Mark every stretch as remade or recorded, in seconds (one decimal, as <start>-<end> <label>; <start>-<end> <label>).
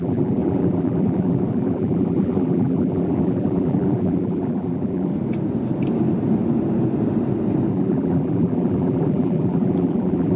0.0-5.1 remade; 5.1-7.7 recorded; 7.7-10.4 remade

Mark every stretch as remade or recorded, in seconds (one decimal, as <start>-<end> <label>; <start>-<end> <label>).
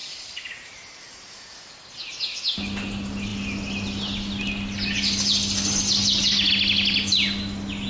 0.0-0.5 remade; 0.5-7.9 recorded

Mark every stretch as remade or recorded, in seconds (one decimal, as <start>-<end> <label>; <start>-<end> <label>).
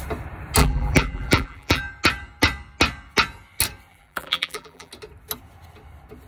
0.0-0.6 recorded; 0.6-1.8 remade; 1.8-3.9 recorded; 3.9-4.9 remade; 4.9-6.3 recorded